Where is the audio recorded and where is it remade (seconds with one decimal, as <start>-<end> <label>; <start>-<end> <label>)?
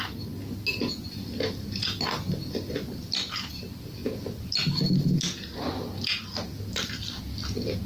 0.0-7.9 recorded